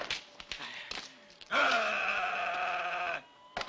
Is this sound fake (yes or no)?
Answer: no